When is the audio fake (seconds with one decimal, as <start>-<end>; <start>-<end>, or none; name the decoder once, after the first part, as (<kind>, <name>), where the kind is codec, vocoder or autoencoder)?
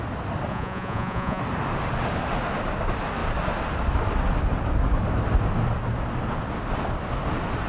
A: 0.5-1.4 (vocoder, Vocos)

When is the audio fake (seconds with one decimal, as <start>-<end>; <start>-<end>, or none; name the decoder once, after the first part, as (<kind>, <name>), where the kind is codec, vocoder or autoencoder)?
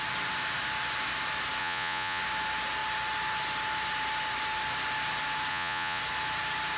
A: 1.6-2.2 (vocoder, Vocos); 5.5-6.0